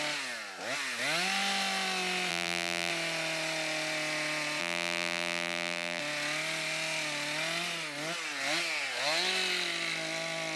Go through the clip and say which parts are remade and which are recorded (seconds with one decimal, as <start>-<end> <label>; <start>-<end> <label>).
0.0-2.3 recorded; 2.3-2.9 remade; 2.9-4.6 recorded; 4.6-6.0 remade; 6.0-10.6 recorded